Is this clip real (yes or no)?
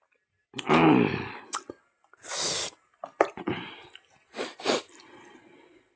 yes